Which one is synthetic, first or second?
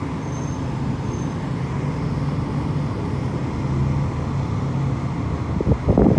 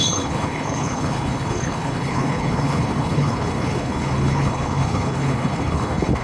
second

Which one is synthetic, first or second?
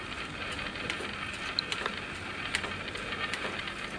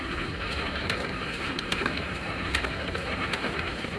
second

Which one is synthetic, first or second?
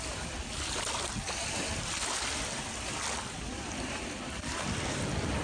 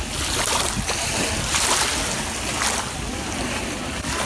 first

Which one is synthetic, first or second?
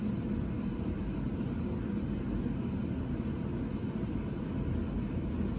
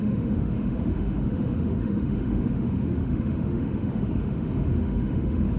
second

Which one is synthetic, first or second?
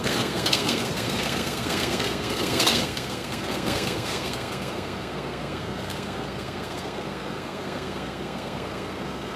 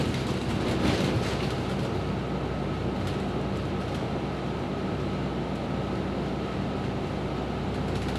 first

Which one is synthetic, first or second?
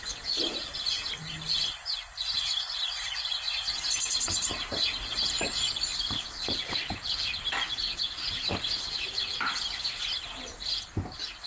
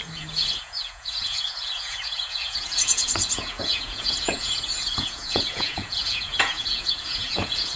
second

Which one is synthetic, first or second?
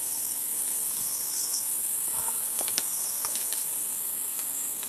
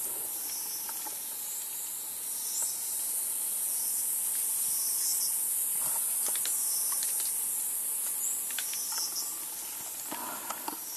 first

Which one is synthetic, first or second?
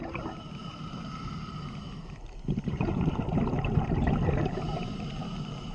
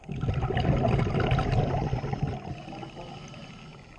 first